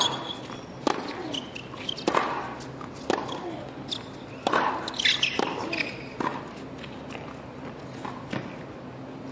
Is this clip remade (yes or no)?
no